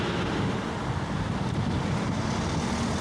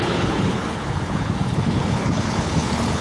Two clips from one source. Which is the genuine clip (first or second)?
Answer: first